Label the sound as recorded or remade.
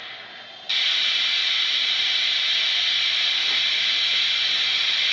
recorded